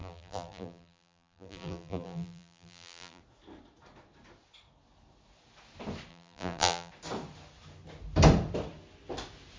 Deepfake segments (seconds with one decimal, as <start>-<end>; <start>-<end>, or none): 0.0-3.2; 6.1-6.9